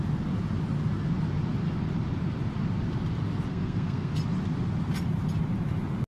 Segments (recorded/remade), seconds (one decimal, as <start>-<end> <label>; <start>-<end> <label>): 0.0-3.5 recorded; 3.5-4.1 remade; 4.1-6.1 recorded